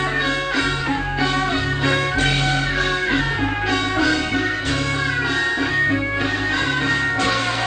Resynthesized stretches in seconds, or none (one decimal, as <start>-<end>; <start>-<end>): 0.8-3.2; 4.0-4.7; 5.7-7.7